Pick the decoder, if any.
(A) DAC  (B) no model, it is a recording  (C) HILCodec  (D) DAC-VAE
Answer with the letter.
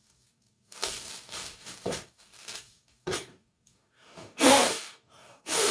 A